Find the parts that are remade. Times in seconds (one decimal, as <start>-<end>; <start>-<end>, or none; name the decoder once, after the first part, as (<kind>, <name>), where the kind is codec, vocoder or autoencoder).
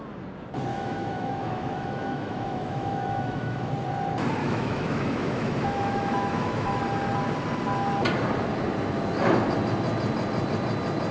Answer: 0.7-3.7 (autoencoder, DAC-VAE); 4.4-6.8